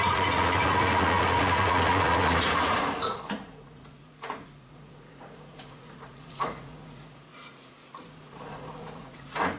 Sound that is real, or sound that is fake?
fake